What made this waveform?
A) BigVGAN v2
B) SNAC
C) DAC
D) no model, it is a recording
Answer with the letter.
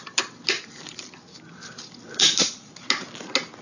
D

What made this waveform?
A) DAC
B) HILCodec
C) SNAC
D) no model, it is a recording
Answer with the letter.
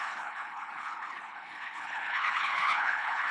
B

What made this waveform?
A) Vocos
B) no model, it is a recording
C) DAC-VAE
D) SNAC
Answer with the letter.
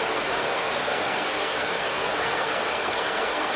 D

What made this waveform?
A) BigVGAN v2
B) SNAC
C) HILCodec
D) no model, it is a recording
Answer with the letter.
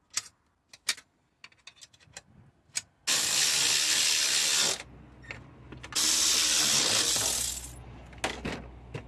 D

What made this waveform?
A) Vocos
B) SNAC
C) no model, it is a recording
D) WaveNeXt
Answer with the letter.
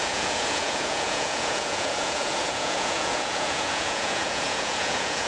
A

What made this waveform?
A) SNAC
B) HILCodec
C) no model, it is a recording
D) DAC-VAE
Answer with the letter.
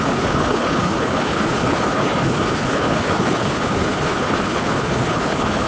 B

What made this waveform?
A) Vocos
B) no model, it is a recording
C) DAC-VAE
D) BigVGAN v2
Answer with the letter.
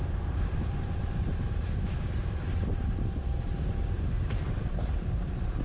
D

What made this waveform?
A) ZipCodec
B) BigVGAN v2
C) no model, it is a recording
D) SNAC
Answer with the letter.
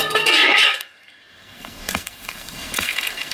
D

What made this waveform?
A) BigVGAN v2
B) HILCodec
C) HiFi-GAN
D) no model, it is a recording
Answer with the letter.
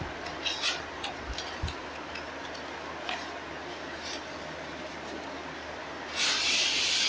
D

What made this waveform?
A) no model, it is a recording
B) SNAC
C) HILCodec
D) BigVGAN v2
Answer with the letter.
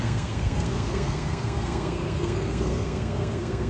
B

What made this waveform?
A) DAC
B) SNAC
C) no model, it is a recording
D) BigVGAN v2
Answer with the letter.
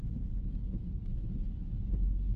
C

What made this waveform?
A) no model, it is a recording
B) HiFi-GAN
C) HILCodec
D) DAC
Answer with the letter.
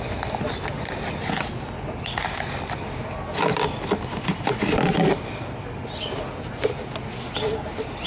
A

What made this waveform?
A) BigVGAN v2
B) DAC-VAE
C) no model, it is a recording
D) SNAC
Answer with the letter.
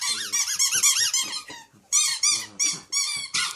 A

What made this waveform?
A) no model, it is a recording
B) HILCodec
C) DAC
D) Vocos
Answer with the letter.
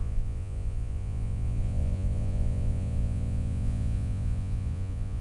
D